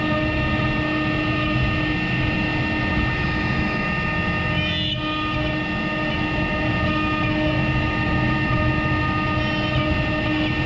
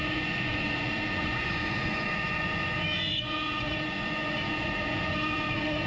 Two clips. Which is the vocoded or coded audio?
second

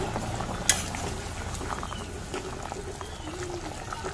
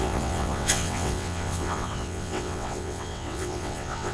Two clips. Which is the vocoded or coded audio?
second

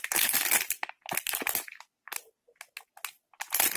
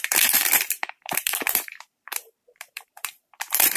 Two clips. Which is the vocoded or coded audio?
second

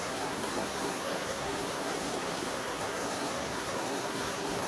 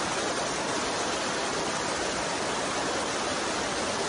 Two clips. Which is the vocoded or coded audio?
first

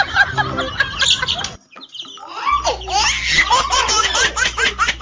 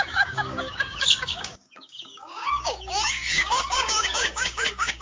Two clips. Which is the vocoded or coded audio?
second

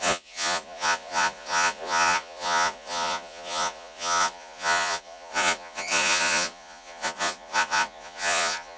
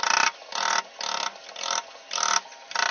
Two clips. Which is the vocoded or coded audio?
first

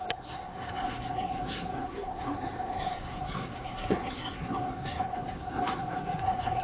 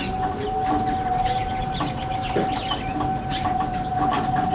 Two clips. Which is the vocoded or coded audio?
first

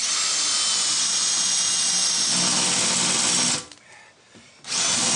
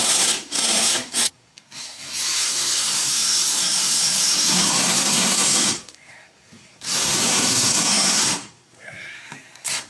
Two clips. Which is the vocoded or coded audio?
second